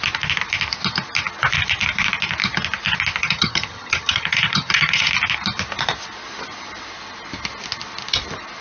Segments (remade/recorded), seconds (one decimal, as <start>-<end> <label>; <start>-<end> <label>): 0.0-3.2 recorded; 3.2-5.1 remade; 5.1-8.6 recorded